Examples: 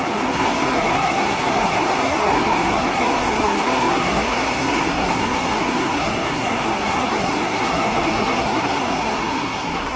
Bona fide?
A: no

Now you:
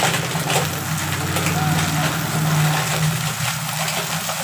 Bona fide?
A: yes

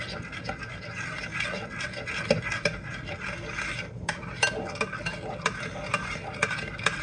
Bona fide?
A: yes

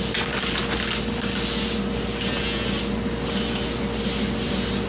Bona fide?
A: yes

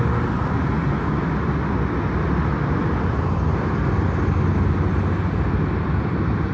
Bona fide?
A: yes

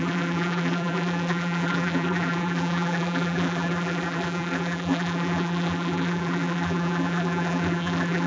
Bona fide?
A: no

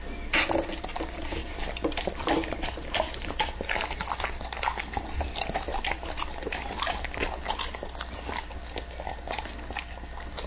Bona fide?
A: yes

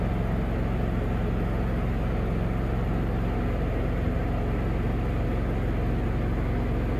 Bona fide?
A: yes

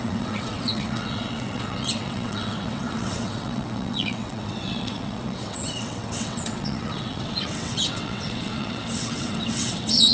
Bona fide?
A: no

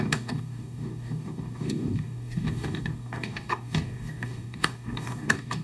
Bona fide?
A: no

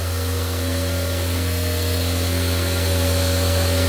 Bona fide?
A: no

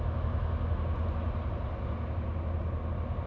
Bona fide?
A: yes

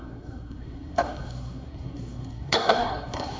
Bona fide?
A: no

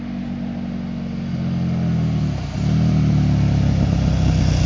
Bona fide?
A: yes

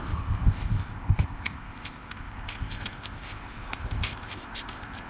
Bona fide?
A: no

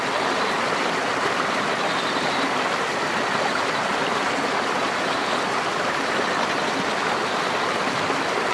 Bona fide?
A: yes